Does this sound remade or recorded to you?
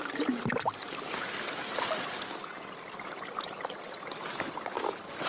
recorded